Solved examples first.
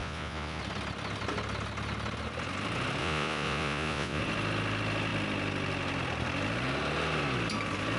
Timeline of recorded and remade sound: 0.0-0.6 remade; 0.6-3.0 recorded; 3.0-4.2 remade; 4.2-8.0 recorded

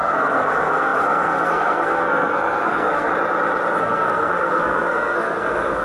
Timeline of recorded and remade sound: 0.0-3.1 remade; 3.1-3.8 recorded; 3.8-5.8 remade

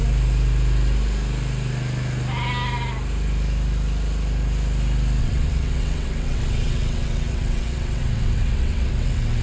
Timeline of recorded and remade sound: 0.0-5.2 recorded; 5.2-9.4 remade

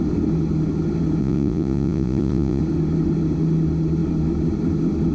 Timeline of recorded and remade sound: 0.0-1.2 recorded; 1.2-2.6 remade; 2.6-5.1 recorded

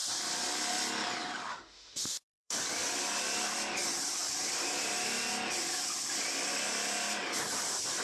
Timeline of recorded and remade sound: 0.0-1.5 recorded; 1.5-2.6 remade; 2.6-8.0 recorded

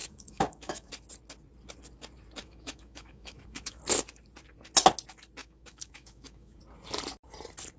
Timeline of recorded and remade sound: 0.0-0.9 remade; 0.9-2.4 recorded; 2.4-3.8 remade; 3.8-5.4 recorded; 5.4-6.6 remade; 6.6-7.8 recorded

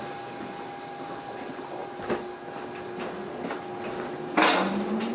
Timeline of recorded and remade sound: 0.0-5.1 recorded

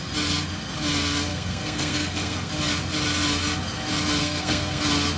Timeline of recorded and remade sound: 0.0-1.3 recorded; 1.3-2.5 remade; 2.5-4.2 recorded; 4.2-4.8 remade; 4.8-5.2 recorded